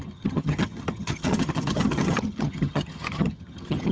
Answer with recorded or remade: remade